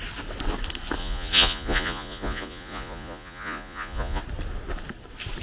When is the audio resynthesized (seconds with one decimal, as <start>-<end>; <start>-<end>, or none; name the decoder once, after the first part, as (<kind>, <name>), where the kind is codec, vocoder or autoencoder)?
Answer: 1.0-4.2 (vocoder, Vocos)